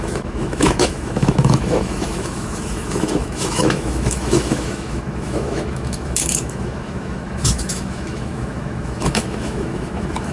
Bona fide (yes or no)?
no